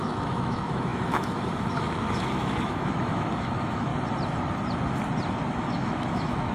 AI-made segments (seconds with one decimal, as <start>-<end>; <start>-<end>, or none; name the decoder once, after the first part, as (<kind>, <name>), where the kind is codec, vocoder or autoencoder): 0.0-3.9 (autoencoder, DAC-VAE); 5.5-6.5